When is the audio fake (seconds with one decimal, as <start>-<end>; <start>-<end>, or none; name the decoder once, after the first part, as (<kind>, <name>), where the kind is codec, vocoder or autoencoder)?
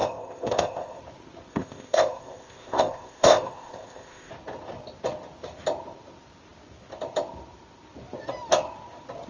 0.0-1.0 (codec, ZipCodec); 1.5-4.3